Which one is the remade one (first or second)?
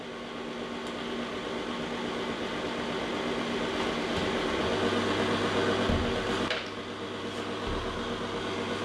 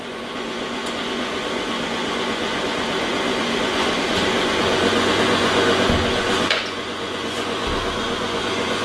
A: second